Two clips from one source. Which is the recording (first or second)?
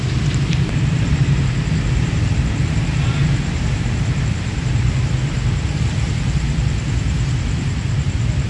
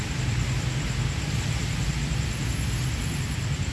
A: second